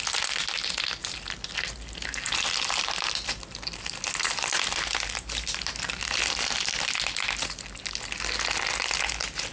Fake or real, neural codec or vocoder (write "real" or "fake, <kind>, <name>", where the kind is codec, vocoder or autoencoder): real